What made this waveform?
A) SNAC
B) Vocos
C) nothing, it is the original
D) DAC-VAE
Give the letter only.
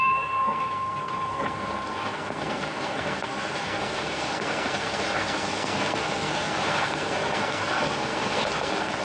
A